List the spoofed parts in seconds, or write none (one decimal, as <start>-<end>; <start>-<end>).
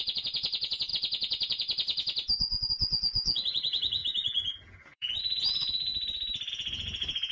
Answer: 0.0-5.9; 6.5-7.3